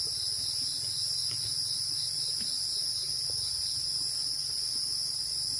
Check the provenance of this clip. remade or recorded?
recorded